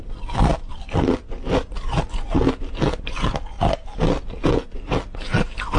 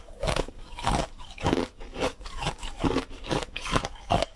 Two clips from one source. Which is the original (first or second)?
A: first